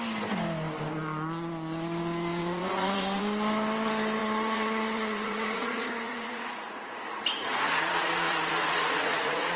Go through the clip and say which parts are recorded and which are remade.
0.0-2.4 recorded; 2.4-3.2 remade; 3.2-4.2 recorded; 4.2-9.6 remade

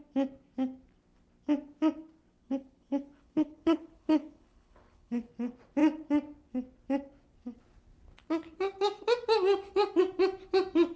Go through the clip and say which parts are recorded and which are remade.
0.0-2.4 recorded; 2.4-5.3 remade; 5.3-11.0 recorded

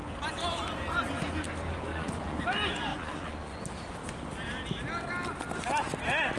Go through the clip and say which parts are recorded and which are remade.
0.0-1.9 recorded; 1.9-2.4 remade; 2.4-2.9 recorded; 2.9-3.6 remade; 3.6-6.4 recorded

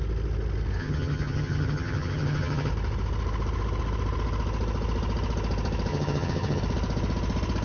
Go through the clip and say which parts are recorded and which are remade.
0.0-0.8 recorded; 0.8-2.7 remade; 2.7-5.9 recorded; 5.9-6.6 remade; 6.6-7.6 recorded